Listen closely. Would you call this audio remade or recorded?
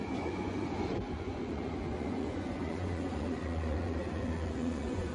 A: remade